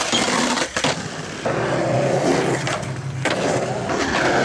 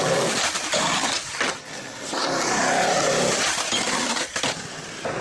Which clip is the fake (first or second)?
second